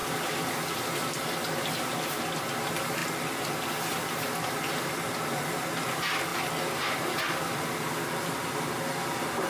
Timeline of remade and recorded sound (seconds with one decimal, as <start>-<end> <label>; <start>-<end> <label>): 0.0-9.5 recorded